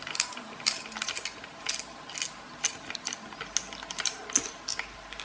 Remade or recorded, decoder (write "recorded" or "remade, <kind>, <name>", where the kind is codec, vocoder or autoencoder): recorded